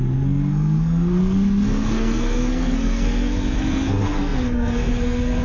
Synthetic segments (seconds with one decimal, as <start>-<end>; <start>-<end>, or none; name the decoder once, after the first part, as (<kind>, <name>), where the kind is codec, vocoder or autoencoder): 0.0-5.4 (codec, SNAC)